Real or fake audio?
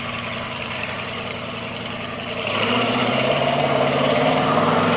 fake